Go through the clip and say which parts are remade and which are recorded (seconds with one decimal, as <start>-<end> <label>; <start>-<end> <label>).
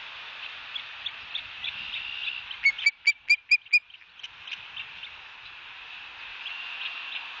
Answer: 0.0-7.4 recorded